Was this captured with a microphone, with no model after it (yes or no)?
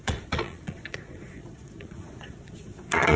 no